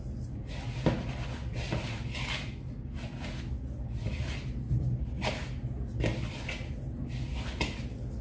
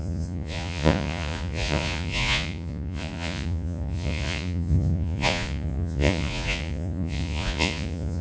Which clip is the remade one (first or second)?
second